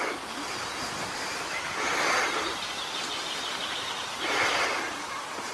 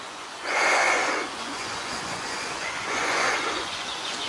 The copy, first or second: second